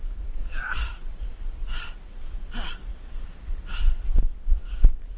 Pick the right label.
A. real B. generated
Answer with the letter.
A